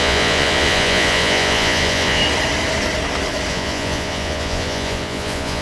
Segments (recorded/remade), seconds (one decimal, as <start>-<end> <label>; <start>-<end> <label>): 0.0-2.2 remade; 2.2-3.5 recorded; 3.5-5.6 remade